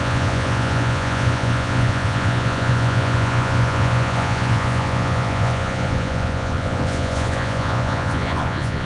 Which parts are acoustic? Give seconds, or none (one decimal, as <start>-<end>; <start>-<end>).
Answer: none